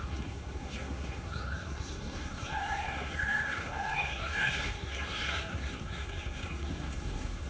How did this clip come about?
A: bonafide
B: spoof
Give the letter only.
B